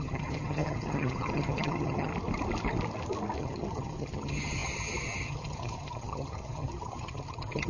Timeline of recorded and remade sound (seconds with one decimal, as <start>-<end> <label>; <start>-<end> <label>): 0.0-2.1 remade; 2.1-3.4 recorded; 3.4-7.7 remade